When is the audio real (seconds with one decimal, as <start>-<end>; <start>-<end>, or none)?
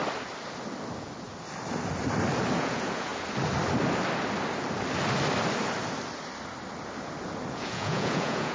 0.0-2.6; 3.1-7.5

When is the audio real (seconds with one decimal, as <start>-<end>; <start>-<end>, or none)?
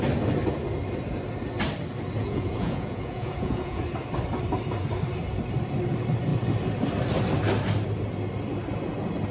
0.0-2.2; 3.8-9.3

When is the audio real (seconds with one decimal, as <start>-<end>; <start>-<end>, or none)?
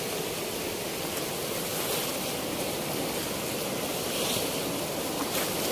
0.0-5.7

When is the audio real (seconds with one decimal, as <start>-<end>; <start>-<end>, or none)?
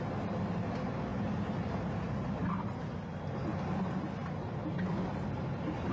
0.0-5.9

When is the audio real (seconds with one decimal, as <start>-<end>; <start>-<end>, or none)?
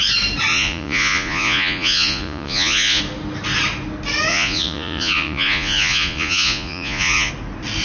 0.0-0.5; 3.0-4.3; 7.3-7.8